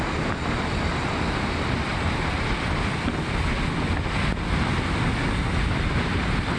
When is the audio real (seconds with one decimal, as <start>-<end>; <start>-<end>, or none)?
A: 0.0-6.6